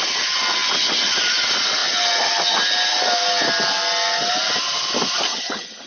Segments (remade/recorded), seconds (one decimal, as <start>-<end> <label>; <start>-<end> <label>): 0.0-5.3 recorded; 5.3-5.9 remade